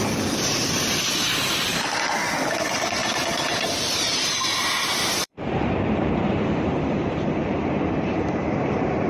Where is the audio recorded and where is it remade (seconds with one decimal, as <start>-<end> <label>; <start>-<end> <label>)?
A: 0.0-9.1 remade